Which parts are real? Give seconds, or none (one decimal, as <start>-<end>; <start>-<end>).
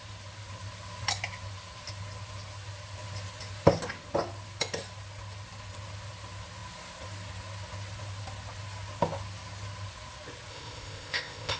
0.0-10.5